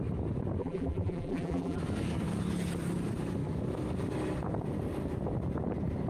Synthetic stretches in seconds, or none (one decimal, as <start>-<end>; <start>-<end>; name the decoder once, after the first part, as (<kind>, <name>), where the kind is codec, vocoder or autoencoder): 0.6-1.8 (vocoder, BigVGAN v2)